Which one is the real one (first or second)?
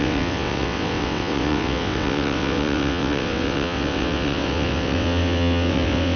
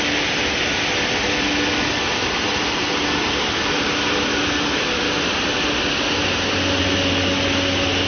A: second